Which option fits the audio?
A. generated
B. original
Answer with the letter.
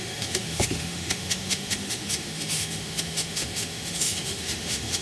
A